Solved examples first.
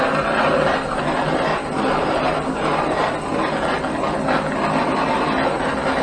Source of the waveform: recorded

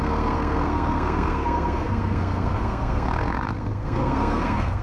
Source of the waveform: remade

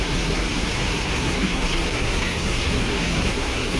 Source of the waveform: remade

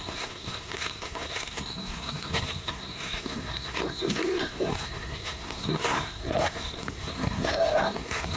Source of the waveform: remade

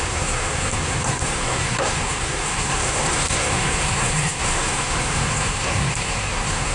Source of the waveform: remade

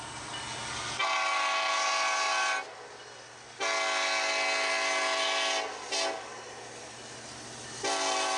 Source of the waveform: recorded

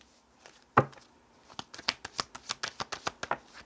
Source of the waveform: recorded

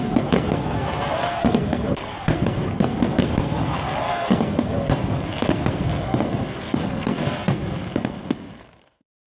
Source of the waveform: remade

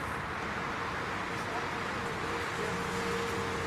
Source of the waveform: recorded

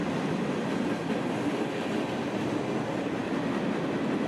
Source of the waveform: recorded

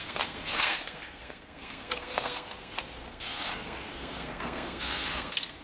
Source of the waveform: remade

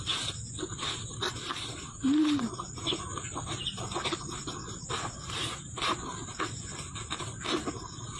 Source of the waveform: recorded